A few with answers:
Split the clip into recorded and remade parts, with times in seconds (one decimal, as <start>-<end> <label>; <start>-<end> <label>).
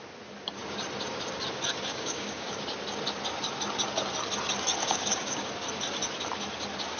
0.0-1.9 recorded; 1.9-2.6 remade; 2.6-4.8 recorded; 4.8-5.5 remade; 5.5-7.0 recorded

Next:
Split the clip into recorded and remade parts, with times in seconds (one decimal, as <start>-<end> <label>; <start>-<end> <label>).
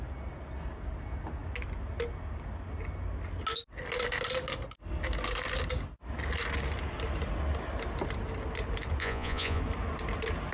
0.0-9.0 recorded; 9.0-9.6 remade; 9.6-10.5 recorded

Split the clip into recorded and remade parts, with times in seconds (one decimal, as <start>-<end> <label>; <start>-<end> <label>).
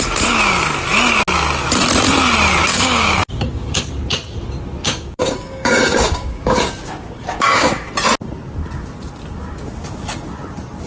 0.0-2.7 recorded; 2.7-3.9 remade; 3.9-4.8 recorded; 4.8-7.9 remade; 7.9-10.9 recorded